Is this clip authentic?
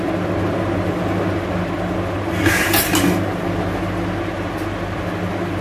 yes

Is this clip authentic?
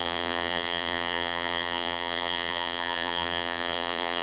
no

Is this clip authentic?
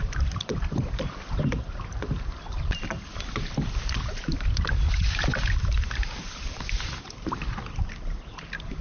no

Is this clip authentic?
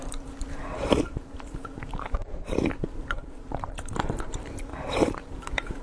no